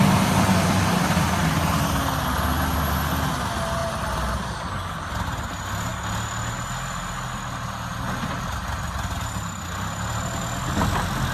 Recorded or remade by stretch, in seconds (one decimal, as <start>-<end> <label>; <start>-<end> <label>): 0.0-11.3 recorded

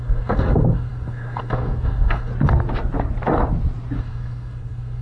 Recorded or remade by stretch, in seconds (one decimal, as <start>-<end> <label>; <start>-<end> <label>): 0.0-2.3 remade; 2.3-4.0 recorded; 4.0-5.0 remade

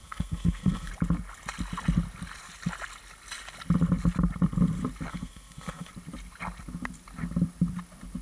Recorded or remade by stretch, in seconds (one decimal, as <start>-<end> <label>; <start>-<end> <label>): 0.0-0.9 remade; 0.9-5.1 recorded; 5.1-5.9 remade; 5.9-8.2 recorded